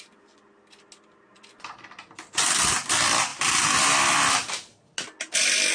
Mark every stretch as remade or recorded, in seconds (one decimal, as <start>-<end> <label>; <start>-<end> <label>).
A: 0.0-5.7 recorded

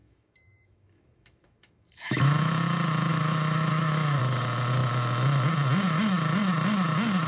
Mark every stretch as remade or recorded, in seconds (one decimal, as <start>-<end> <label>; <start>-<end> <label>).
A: 0.0-2.5 remade; 2.5-3.1 recorded; 3.1-4.2 remade; 4.2-7.3 recorded